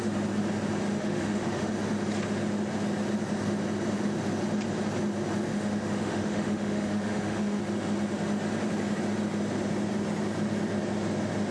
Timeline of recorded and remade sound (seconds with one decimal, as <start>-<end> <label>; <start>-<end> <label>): 0.0-0.9 recorded; 0.9-1.7 remade; 1.7-5.5 recorded; 5.5-7.6 remade; 7.6-11.5 recorded